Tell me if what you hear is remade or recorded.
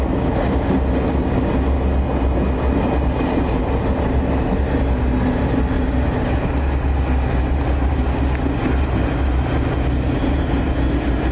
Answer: recorded